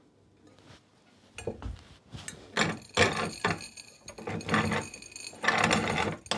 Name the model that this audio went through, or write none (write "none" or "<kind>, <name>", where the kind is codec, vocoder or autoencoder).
none